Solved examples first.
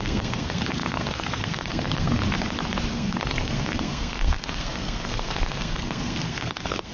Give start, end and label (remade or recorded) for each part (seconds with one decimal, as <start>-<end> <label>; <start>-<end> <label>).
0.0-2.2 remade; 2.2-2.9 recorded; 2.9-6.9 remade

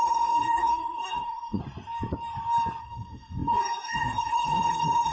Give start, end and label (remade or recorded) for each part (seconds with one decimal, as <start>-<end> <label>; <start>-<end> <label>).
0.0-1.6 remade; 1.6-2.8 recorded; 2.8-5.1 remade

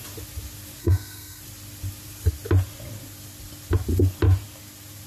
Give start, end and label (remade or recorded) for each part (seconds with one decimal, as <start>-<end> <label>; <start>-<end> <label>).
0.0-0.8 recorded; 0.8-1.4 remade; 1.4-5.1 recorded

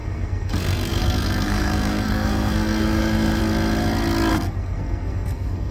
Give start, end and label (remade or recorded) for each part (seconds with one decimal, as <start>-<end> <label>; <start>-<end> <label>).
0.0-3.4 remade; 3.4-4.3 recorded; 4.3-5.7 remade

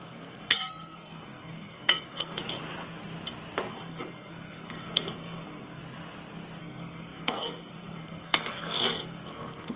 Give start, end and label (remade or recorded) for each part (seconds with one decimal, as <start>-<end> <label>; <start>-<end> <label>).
0.0-2.4 remade; 2.4-3.7 recorded; 3.7-5.8 remade; 5.8-6.6 recorded; 6.6-9.8 remade

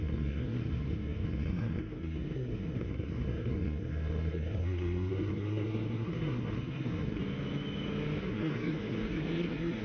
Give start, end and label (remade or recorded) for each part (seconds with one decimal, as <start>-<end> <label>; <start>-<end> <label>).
0.0-7.2 remade; 7.2-8.2 recorded; 8.2-9.8 remade

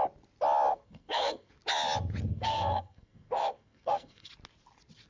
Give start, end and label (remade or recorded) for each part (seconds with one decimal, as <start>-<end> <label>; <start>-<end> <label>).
0.0-0.7 recorded; 0.7-1.5 remade; 1.5-2.3 recorded; 2.3-4.3 remade; 4.3-5.1 recorded